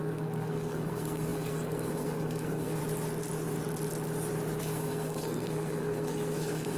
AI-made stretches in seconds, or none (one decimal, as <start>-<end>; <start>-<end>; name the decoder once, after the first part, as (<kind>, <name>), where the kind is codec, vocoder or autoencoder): 0.0-2.8 (codec, SNAC); 4.6-6.8